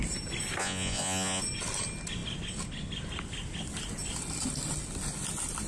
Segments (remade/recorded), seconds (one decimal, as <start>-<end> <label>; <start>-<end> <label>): 0.0-0.6 recorded; 0.6-1.4 remade; 1.4-5.7 recorded